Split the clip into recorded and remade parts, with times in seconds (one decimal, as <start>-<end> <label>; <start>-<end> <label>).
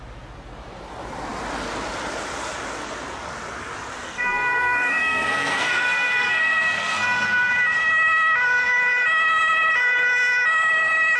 0.0-4.0 recorded; 4.0-7.5 remade; 7.5-11.2 recorded